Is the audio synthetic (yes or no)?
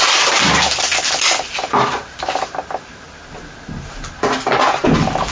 no